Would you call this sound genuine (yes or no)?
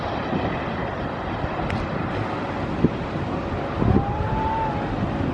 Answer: yes